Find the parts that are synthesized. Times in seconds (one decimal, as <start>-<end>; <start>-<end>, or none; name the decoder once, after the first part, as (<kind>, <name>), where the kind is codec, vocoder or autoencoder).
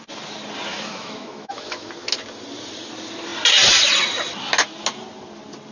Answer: 0.7-1.9 (autoencoder, DAC-VAE)